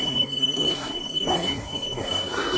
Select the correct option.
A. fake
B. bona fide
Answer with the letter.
A